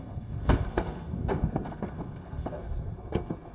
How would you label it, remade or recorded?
remade